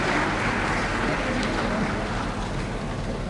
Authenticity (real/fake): real